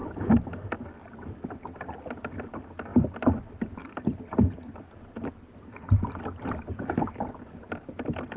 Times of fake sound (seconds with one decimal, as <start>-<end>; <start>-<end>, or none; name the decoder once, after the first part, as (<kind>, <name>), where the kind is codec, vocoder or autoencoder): none